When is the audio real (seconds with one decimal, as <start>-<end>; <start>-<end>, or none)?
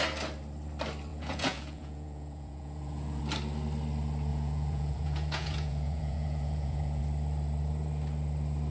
0.0-1.1; 3.2-4.3; 7.0-8.7